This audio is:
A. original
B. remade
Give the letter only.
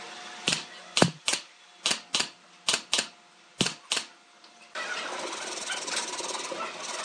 A